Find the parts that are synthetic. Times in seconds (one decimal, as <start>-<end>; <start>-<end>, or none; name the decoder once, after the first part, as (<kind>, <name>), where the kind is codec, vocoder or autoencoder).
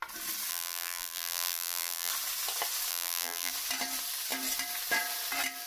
0.5-2.1 (vocoder, BigVGAN v2); 2.9-3.5